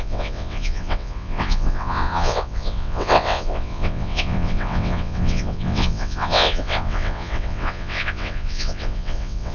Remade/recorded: remade